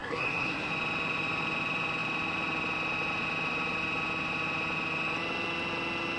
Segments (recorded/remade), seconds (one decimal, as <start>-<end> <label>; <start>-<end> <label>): 0.0-0.7 remade; 0.7-6.2 recorded